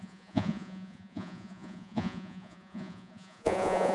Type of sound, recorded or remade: remade